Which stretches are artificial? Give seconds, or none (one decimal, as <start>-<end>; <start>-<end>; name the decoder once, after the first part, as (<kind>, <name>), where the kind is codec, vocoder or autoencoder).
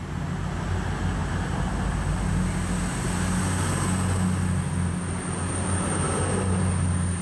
none